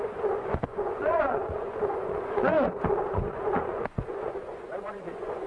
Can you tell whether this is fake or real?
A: fake